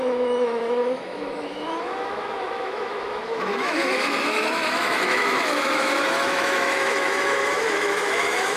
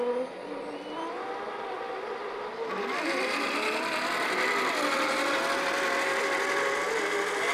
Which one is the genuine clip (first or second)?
second